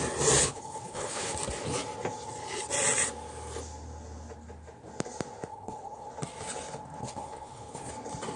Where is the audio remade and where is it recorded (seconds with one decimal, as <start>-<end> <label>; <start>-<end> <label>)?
0.0-0.4 recorded; 0.4-1.3 remade; 1.3-5.5 recorded; 5.5-6.1 remade; 6.1-7.0 recorded; 7.0-7.9 remade; 7.9-8.4 recorded